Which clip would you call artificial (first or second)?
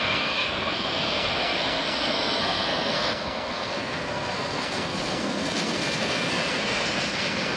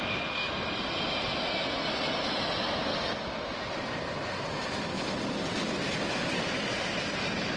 first